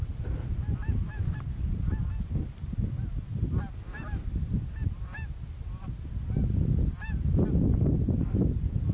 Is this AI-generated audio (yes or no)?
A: no